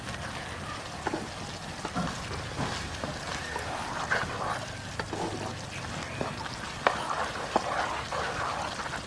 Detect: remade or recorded recorded